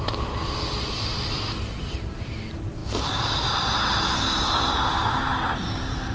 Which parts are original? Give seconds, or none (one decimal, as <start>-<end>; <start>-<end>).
0.0-6.1